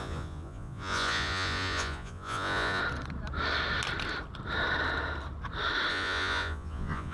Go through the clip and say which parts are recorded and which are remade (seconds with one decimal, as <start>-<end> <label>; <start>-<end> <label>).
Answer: 0.0-2.8 remade; 2.8-5.9 recorded; 5.9-7.1 remade